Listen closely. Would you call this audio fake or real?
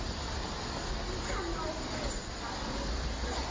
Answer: real